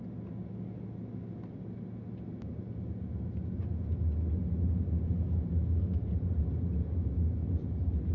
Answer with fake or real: real